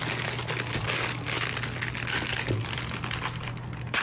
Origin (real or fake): real